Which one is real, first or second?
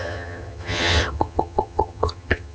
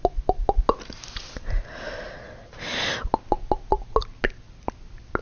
second